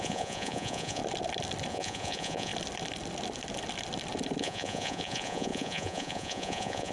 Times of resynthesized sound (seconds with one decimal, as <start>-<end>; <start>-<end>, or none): 0.0-1.0; 1.7-2.5; 4.4-6.9